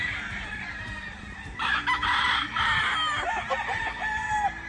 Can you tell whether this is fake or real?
fake